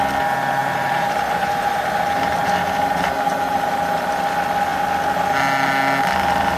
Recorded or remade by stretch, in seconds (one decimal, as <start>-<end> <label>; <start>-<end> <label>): 0.0-0.6 recorded; 0.6-3.7 remade; 3.7-6.6 recorded